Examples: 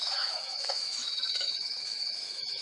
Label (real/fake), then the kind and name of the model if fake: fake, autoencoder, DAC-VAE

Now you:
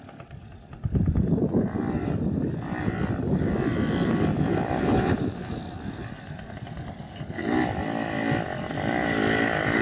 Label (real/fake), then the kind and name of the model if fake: real